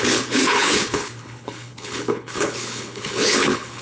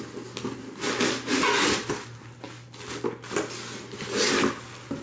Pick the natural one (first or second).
second